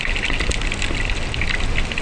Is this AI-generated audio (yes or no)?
no